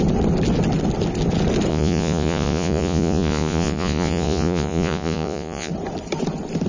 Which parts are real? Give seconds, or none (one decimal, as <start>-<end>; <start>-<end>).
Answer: 0.0-1.7; 5.7-6.7